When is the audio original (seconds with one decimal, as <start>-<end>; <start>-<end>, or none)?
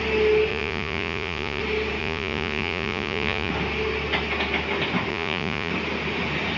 0.0-0.5; 1.6-2.0; 3.5-5.1; 5.7-6.6